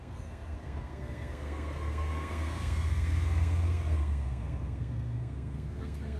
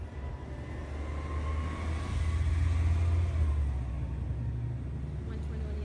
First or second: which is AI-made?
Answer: first